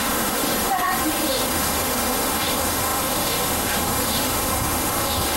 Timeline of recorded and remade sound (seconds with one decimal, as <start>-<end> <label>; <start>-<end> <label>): 0.0-5.4 remade